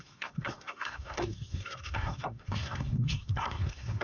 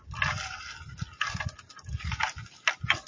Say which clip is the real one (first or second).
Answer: second